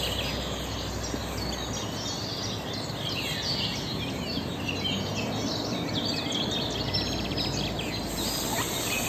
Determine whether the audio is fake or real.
real